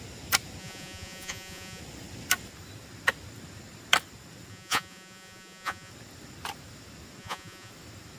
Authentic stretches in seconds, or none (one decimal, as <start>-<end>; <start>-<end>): 0.0-0.6; 1.8-4.5; 5.9-7.2; 7.7-8.2